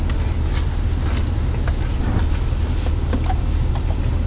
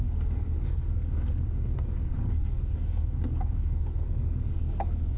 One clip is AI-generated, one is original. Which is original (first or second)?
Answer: first